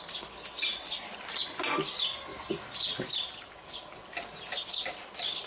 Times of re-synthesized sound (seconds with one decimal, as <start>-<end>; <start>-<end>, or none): none